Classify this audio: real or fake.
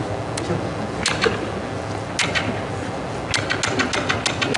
real